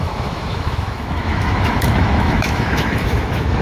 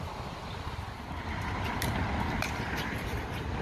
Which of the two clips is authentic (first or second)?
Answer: second